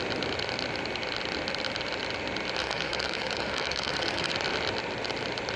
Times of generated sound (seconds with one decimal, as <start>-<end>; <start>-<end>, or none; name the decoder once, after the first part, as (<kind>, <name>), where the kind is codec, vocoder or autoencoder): 2.6-4.3 (codec, DAC)